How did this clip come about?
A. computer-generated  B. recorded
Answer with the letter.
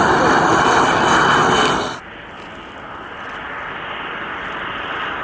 B